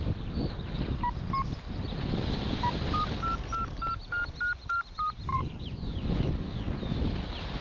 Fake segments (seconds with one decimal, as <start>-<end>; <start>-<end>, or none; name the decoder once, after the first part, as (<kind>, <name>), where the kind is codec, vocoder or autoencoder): 5.3-6.8 (vocoder, Vocos)